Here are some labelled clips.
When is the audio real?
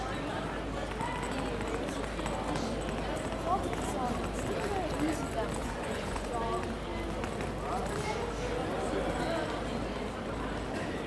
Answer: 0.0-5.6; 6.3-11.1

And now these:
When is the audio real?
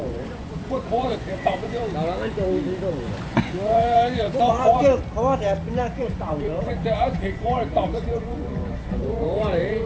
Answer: 1.8-2.9; 5.0-5.8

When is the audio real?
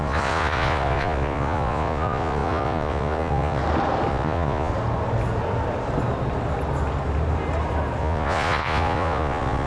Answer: 3.6-4.1; 4.7-8.0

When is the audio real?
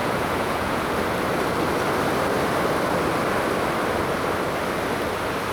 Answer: 0.9-5.5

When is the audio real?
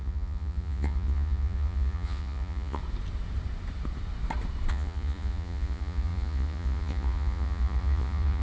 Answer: 2.8-4.7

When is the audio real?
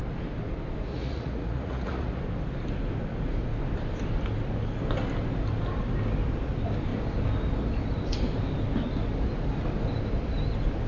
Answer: 0.0-0.9; 2.2-10.9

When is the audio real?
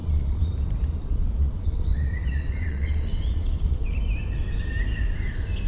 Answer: 0.5-0.9; 3.9-5.7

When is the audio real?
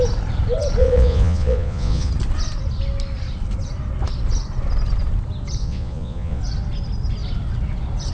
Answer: 0.0-0.8; 2.1-5.6; 6.4-8.1